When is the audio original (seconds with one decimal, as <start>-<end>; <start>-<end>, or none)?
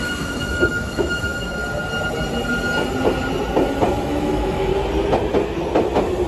1.6-4.0; 4.7-6.3